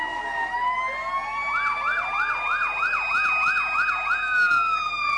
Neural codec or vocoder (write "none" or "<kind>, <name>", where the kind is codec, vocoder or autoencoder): none